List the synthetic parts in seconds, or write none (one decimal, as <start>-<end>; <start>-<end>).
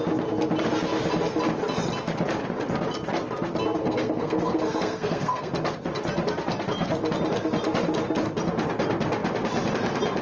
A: 3.8-5.5